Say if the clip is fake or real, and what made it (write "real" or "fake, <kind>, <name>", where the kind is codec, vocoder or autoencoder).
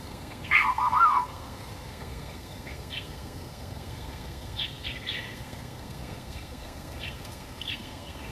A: fake, codec, SNAC